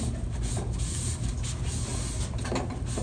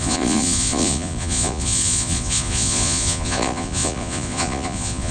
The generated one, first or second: second